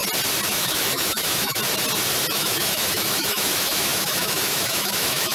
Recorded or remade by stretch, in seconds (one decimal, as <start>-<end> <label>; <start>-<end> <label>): 0.0-0.5 recorded; 0.5-1.6 remade; 1.6-2.3 recorded; 2.3-5.3 remade